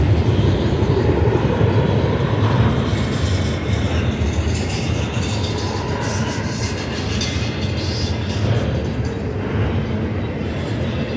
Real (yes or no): yes